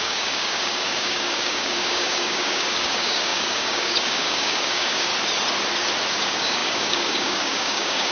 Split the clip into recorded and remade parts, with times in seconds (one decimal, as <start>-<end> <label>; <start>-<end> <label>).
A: 0.0-5.1 remade; 5.1-6.1 recorded; 6.1-8.1 remade